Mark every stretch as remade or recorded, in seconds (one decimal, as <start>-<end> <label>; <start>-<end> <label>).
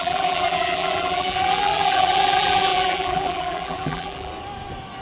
0.0-4.3 remade; 4.3-5.0 recorded